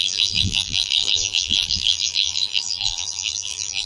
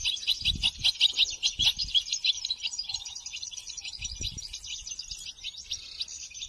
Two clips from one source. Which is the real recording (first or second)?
second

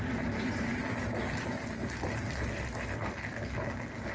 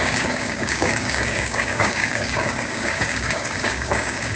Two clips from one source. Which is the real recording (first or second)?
first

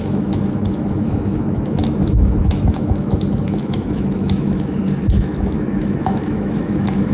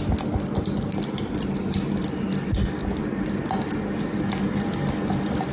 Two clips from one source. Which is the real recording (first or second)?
second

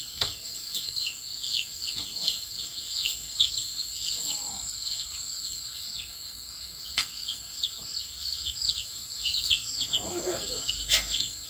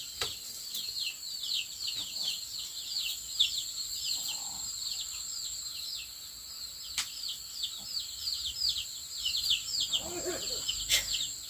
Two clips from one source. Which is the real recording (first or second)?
second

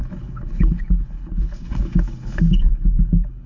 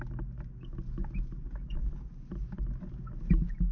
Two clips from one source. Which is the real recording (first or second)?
second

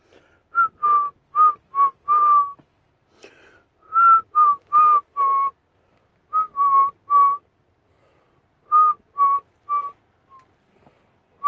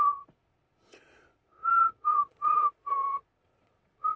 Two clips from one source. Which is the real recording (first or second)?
first